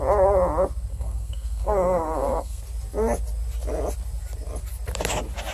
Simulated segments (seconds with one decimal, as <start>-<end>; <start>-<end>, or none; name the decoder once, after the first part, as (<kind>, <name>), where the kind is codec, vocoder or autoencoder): 0.9-2.6 (codec, SNAC)